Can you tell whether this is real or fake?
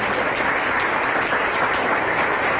real